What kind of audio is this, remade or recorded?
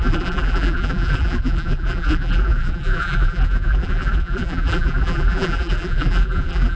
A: remade